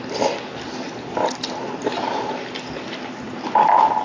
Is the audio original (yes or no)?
yes